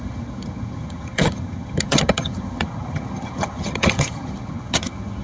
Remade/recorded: remade